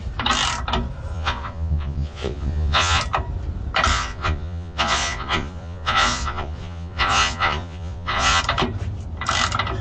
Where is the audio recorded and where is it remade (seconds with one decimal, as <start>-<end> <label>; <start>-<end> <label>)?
0.0-1.1 recorded; 1.1-3.0 remade; 3.0-3.9 recorded; 3.9-8.4 remade; 8.4-9.8 recorded